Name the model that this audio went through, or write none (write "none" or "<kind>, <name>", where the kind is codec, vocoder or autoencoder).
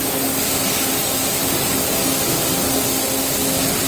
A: none